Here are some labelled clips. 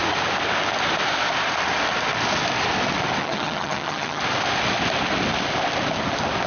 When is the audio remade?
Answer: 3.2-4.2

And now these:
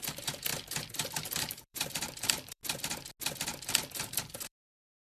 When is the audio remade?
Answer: 0.0-0.5; 1.4-2.6; 4.4-5.1

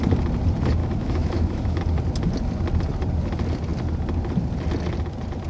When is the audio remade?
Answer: 0.8-1.8

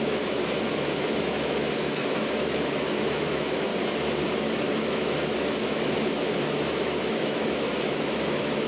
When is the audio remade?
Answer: 0.0-3.7; 4.6-8.7

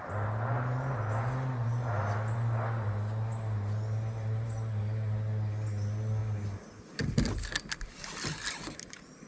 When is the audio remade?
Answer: none

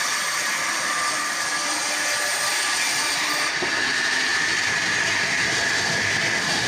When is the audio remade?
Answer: none